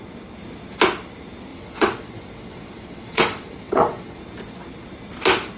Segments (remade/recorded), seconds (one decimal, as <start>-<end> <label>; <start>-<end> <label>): 0.0-1.5 recorded; 1.5-4.2 remade; 4.2-5.6 recorded